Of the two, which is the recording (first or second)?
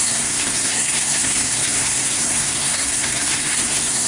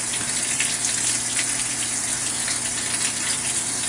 second